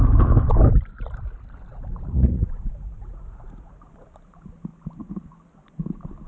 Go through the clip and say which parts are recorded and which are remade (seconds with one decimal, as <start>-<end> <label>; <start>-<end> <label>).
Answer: 0.0-1.7 recorded; 1.7-3.8 remade; 3.8-6.3 recorded